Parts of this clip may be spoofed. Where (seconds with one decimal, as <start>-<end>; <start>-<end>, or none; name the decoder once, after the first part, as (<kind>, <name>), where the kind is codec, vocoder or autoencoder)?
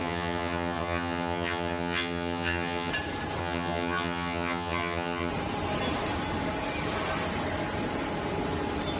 0.0-2.9 (vocoder, HiFi-GAN); 3.4-5.3